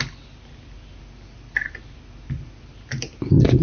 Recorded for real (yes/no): yes